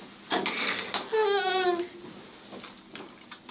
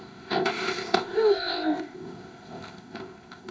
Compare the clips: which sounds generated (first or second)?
second